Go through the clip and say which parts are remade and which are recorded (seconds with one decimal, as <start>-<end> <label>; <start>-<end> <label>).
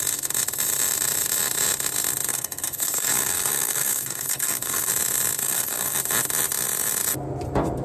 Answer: 0.0-2.3 recorded; 2.3-4.9 remade; 4.9-5.4 recorded; 5.4-6.0 remade; 6.0-7.8 recorded